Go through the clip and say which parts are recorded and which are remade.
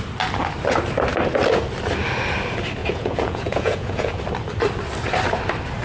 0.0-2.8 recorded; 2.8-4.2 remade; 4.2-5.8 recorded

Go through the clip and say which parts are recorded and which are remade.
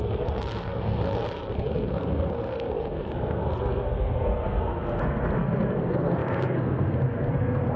0.0-7.8 remade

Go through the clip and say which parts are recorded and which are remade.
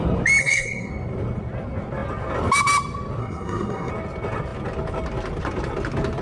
0.0-0.4 recorded; 0.4-0.9 remade; 0.9-3.2 recorded; 3.2-3.9 remade; 3.9-6.2 recorded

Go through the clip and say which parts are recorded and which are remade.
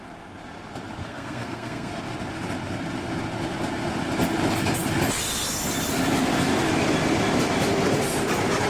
0.0-1.0 recorded; 1.0-1.9 remade; 1.9-8.7 recorded